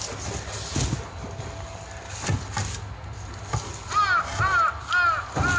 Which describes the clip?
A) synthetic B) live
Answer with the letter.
B